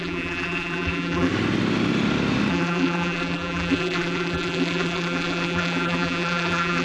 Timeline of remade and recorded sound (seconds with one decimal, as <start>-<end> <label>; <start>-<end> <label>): 0.0-1.3 remade; 1.3-2.5 recorded; 2.5-6.8 remade